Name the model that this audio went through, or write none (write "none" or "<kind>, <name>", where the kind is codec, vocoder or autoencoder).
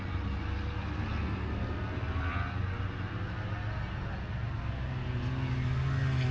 none